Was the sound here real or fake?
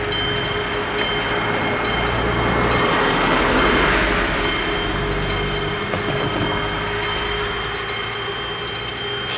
real